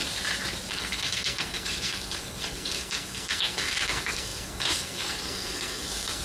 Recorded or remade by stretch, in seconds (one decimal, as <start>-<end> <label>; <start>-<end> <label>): 0.0-0.7 recorded; 0.7-6.2 remade